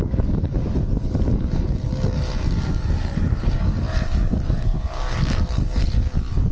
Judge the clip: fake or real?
fake